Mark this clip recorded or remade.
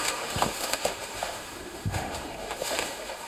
remade